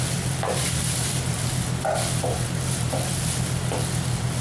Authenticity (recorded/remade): remade